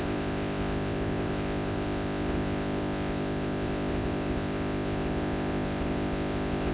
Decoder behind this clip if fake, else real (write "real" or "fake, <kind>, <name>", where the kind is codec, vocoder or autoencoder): fake, codec, ZipCodec